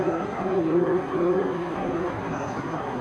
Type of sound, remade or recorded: remade